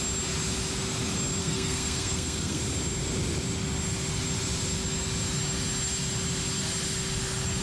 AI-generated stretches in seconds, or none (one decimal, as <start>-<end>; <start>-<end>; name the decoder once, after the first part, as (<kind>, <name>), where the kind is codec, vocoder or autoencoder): 1.4-2.6 (codec, SNAC)